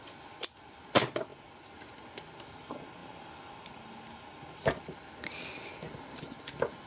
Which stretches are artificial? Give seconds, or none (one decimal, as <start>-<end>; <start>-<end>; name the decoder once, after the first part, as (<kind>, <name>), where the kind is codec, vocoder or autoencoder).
none